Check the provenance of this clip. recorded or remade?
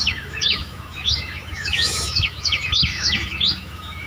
remade